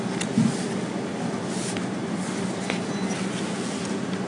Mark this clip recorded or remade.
recorded